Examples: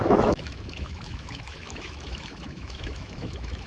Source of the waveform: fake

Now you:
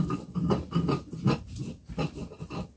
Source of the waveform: real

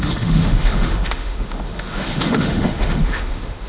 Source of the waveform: fake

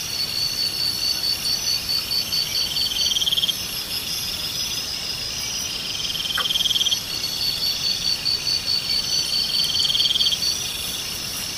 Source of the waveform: real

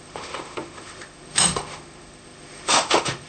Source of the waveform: fake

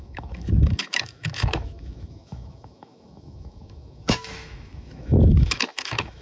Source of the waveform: fake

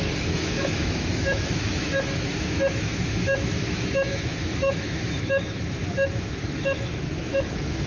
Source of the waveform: fake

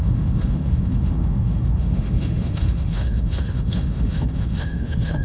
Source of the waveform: fake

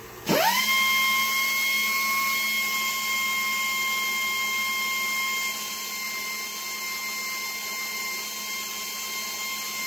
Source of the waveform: real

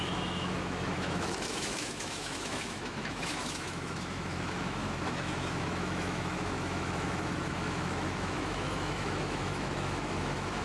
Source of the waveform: fake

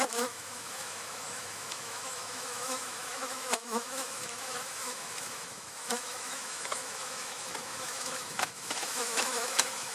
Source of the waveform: fake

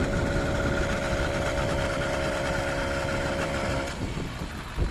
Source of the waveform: real